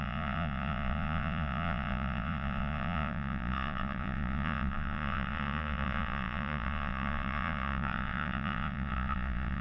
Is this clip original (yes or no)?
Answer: no